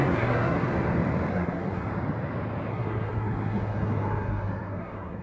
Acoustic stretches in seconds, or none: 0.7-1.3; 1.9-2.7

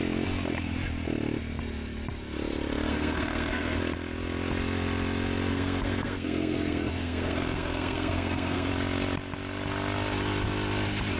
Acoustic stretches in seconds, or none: 0.0-2.9; 3.8-5.5; 8.7-11.2